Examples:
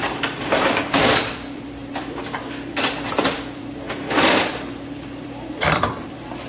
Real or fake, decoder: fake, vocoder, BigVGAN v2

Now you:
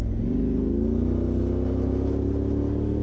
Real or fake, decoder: real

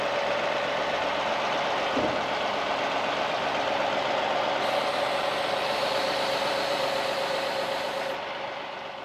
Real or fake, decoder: fake, vocoder, BigVGAN v2